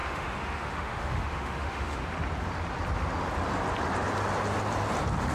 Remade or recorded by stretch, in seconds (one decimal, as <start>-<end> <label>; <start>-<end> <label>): 0.0-2.0 remade; 2.0-5.3 recorded